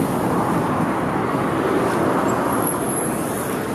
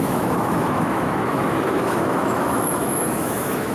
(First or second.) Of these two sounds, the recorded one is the first